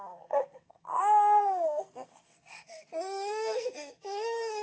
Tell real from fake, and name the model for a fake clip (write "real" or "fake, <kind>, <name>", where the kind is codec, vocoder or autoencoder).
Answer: fake, codec, SNAC